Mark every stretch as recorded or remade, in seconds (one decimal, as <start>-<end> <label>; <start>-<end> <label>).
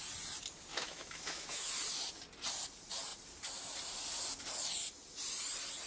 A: 0.0-0.7 recorded; 0.7-1.7 remade; 1.7-5.9 recorded